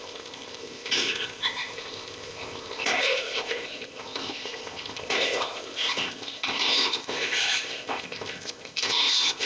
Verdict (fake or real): fake